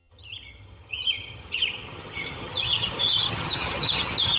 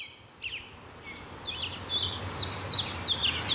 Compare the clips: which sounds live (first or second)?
second